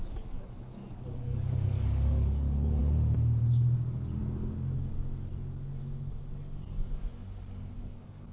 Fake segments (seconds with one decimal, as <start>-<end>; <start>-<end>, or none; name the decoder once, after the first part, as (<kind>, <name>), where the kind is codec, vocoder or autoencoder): 0.0-2.8 (codec, DAC); 7.8-8.3